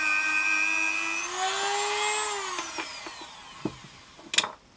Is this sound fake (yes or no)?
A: no